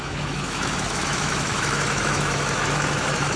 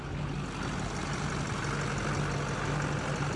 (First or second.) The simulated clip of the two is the first